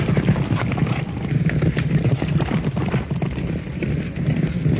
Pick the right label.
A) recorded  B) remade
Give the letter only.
A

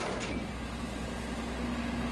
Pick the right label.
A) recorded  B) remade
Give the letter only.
A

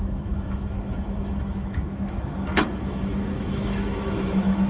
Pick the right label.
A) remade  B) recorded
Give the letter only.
A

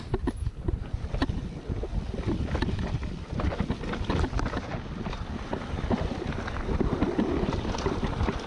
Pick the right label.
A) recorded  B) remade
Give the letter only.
A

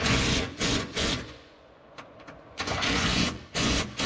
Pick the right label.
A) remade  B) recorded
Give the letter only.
A